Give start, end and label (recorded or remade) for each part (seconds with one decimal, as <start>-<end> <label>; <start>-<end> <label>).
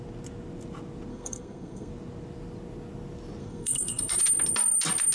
0.0-1.1 recorded; 1.1-1.9 remade; 1.9-3.4 recorded; 3.4-4.2 remade; 4.2-5.1 recorded